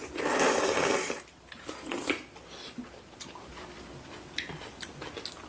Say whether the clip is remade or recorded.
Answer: recorded